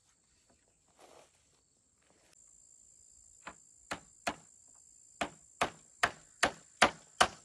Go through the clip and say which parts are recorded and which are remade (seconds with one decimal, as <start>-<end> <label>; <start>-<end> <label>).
0.0-7.4 recorded